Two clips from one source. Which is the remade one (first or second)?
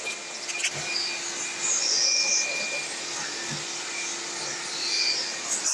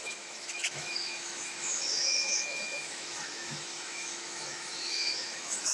second